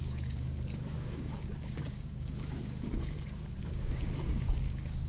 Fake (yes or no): yes